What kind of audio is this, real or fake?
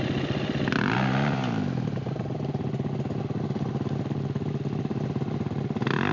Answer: real